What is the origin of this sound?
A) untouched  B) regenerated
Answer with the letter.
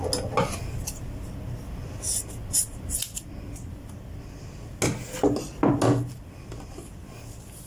A